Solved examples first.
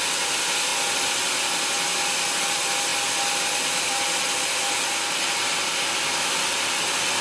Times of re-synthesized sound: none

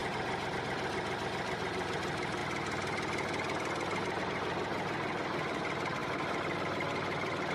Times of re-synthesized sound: 0.0-1.5 (vocoder, BigVGAN v2); 2.4-4.2; 6.0-7.5

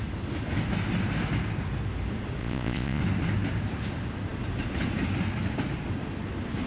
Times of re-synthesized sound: 2.4-3.0 (vocoder, Vocos)

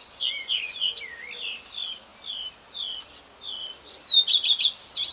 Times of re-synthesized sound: 0.0-1.0 (vocoder, Vocos)

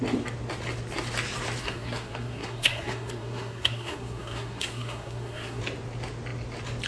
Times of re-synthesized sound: 1.6-5.6 (codec, SNAC)

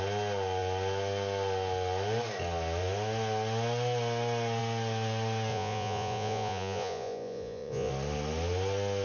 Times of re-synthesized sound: 5.5-7.9 (vocoder, Vocos)